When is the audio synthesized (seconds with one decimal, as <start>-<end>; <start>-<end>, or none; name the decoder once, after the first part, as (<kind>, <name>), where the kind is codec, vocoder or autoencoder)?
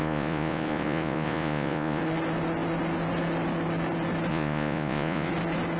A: 0.0-2.0 (vocoder, Vocos); 4.3-5.3